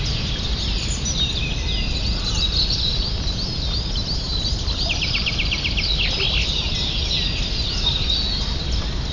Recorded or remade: recorded